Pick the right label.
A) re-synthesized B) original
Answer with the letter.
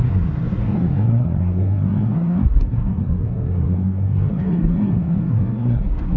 A